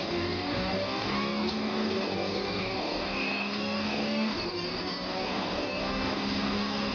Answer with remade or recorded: remade